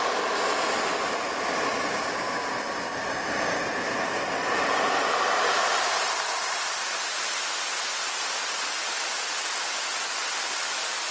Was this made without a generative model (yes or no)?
yes